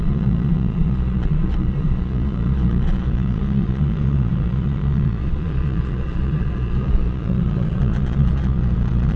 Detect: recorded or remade remade